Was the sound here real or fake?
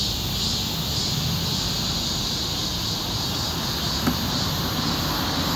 real